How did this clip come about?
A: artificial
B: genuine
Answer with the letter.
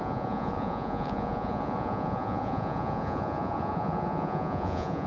A